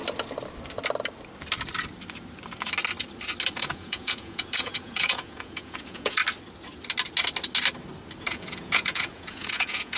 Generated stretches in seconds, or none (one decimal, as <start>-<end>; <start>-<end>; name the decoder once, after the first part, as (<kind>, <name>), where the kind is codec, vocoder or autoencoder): 3.6-6.2 (vocoder, Vocos); 8.2-10.0